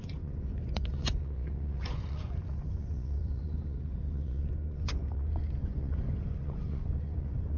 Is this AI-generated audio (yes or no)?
yes